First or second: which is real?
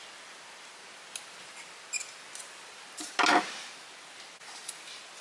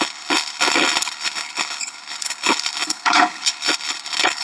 first